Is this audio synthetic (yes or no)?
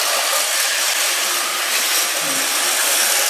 no